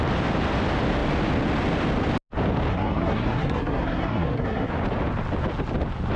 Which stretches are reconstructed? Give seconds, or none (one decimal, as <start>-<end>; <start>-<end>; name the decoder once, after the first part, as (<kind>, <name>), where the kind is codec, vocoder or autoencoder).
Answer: 2.7-4.7 (codec, SNAC)